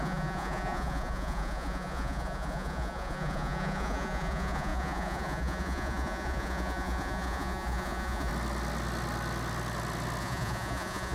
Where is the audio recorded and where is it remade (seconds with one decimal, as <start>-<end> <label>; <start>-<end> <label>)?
0.0-8.3 remade; 8.3-10.2 recorded; 10.2-11.1 remade